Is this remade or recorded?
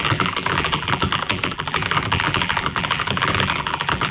remade